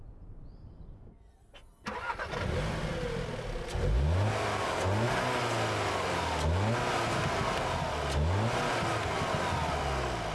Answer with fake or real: real